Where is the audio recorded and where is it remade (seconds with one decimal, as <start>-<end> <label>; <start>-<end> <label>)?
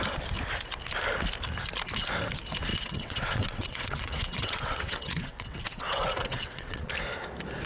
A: 0.0-2.7 recorded; 2.7-6.9 remade; 6.9-7.7 recorded